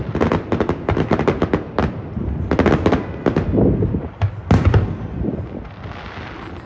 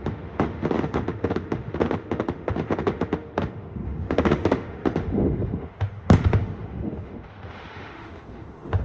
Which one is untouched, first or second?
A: first